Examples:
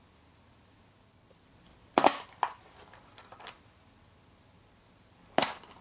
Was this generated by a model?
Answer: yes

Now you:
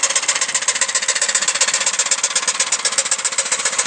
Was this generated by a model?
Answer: no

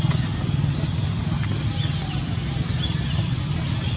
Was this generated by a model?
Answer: no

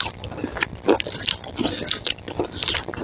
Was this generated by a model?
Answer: yes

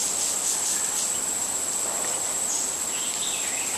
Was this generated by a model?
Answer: no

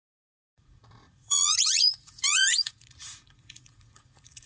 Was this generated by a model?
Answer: yes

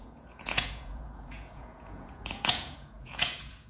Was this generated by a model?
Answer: yes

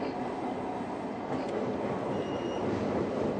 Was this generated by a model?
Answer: no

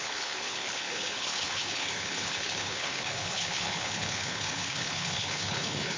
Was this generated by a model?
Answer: yes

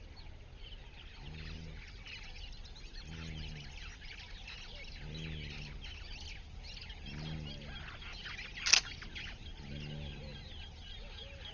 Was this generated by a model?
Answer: no